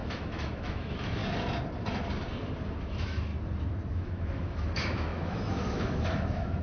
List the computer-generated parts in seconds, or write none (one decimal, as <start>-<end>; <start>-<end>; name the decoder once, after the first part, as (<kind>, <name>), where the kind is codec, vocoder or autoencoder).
0.0-1.2 (autoencoder, DAC-VAE); 2.8-3.3; 3.9-6.6